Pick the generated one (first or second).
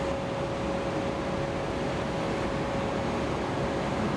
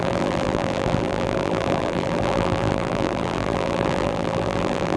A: second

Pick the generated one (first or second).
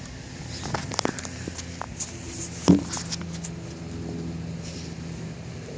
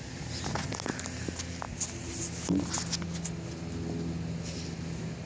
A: first